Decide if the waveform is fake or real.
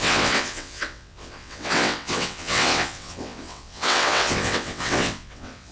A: fake